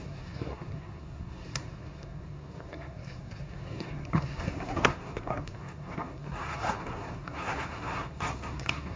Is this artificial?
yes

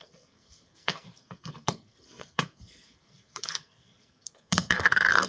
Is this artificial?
yes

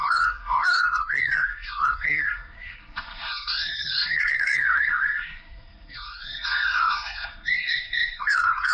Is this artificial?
yes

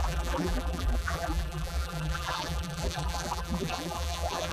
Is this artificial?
yes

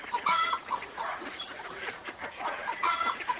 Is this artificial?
yes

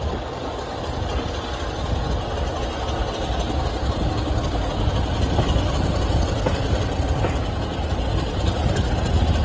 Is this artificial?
no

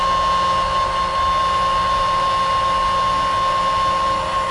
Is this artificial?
no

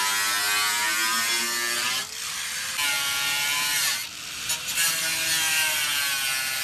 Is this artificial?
no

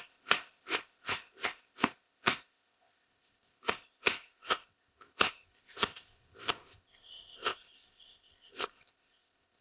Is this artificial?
yes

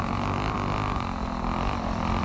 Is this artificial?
yes